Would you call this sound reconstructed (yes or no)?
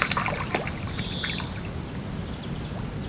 no